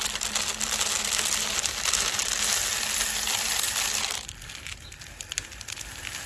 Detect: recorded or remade recorded